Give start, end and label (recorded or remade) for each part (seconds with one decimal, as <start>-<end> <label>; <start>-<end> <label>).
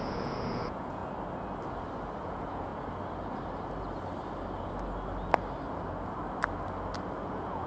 0.0-1.0 remade; 1.0-2.2 recorded; 2.2-2.7 remade; 2.7-7.3 recorded; 7.3-7.7 remade